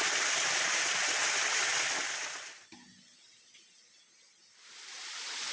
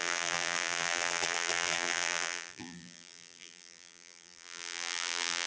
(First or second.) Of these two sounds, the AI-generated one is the second